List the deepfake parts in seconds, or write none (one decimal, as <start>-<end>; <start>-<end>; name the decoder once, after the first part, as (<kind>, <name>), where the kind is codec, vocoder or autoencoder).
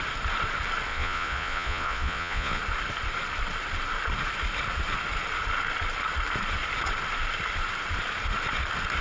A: 0.9-2.6 (vocoder, Vocos)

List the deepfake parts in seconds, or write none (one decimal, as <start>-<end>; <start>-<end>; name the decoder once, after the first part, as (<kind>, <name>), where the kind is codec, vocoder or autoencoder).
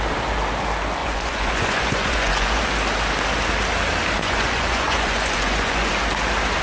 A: 1.0-2.6 (vocoder, Vocos); 4.2-5.9